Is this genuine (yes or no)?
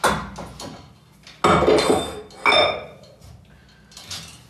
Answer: yes